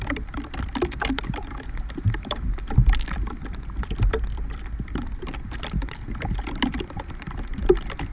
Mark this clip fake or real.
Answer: fake